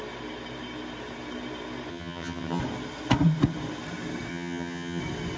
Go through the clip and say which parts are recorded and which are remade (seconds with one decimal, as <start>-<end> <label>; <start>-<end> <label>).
0.0-1.9 recorded; 1.9-2.6 remade; 2.6-4.3 recorded; 4.3-5.0 remade; 5.0-5.4 recorded